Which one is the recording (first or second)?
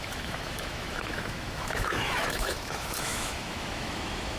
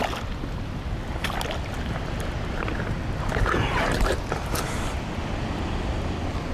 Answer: second